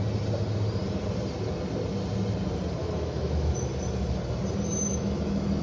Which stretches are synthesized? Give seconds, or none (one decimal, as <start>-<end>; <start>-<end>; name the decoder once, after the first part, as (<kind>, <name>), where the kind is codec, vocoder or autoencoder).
2.8-3.5 (autoencoder, DAC-VAE); 4.9-5.6